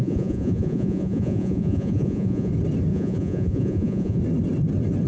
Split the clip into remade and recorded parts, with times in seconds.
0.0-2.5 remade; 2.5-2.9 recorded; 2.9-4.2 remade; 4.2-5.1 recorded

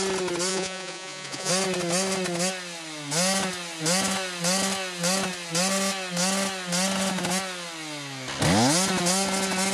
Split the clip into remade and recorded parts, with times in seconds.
0.0-0.5 recorded; 0.5-1.5 remade; 1.5-9.7 recorded

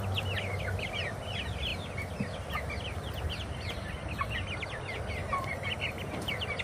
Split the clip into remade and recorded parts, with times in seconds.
0.0-5.2 recorded; 5.2-6.6 remade

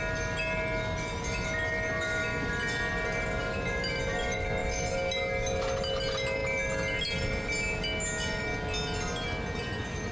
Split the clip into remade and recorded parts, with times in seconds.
0.0-10.1 recorded